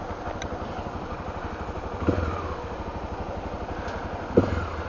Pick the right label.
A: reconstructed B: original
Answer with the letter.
B